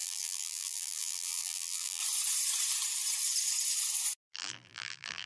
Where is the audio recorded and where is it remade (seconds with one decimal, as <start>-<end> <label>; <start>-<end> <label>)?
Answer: 0.0-2.0 remade; 2.0-4.3 recorded; 4.3-5.3 remade